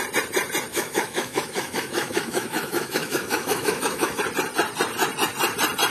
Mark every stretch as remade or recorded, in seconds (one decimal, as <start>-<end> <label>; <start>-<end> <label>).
0.0-0.7 recorded; 0.7-4.2 remade; 4.2-5.9 recorded